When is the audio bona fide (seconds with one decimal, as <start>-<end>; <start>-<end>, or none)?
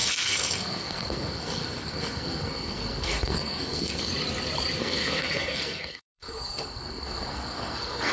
4.1-4.8